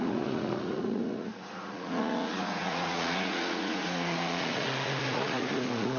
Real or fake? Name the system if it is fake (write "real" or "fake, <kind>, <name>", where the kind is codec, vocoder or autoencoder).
fake, vocoder, Vocos